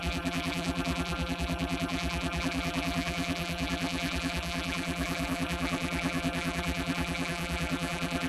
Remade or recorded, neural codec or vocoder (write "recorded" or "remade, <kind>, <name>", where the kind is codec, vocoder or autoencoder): remade, vocoder, BigVGAN v2